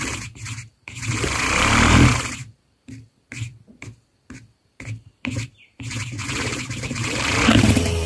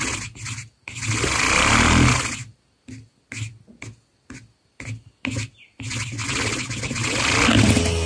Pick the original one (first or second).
second